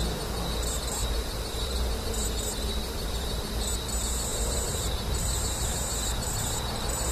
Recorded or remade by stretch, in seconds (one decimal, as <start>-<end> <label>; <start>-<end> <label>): 0.0-1.0 recorded; 1.0-3.7 remade; 3.7-4.3 recorded; 4.3-7.1 remade